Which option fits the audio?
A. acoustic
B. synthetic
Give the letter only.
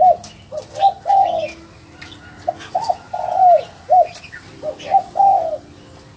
A